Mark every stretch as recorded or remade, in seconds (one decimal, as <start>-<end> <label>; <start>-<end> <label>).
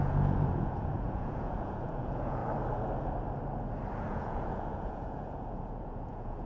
0.0-2.4 remade; 2.4-4.1 recorded; 4.1-6.5 remade